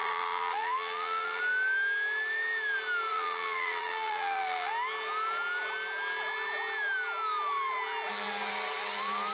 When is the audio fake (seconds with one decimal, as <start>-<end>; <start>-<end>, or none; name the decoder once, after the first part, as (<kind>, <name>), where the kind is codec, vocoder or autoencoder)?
0.0-1.4 (vocoder, BigVGAN v2); 3.1-4.7